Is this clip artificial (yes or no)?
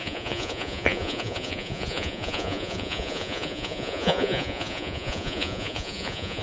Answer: yes